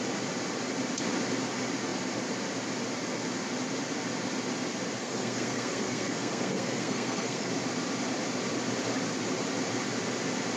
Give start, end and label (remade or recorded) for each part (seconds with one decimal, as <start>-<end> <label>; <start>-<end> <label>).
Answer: 0.0-5.0 recorded; 5.0-7.5 remade; 7.5-10.6 recorded

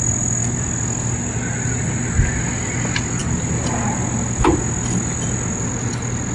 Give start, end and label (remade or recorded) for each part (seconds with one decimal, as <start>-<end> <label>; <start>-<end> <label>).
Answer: 0.0-6.3 recorded

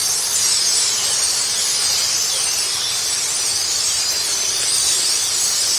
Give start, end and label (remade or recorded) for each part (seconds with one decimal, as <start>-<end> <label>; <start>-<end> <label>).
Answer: 0.0-5.8 recorded

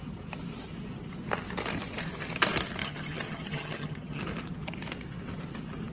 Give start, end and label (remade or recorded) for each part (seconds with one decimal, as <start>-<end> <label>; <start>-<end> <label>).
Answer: 0.0-2.8 recorded; 2.8-4.2 remade; 4.2-5.9 recorded

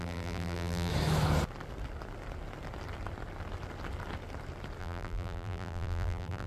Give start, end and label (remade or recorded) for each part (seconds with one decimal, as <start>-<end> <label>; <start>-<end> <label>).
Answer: 0.0-0.9 remade; 0.9-4.8 recorded; 4.8-6.5 remade